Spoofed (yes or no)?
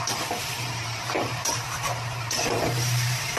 yes